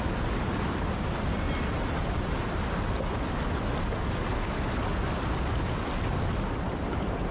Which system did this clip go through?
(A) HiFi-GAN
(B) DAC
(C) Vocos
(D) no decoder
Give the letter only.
D